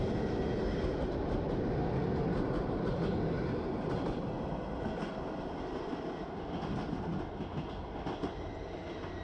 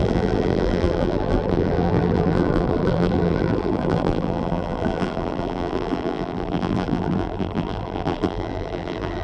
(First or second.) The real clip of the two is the first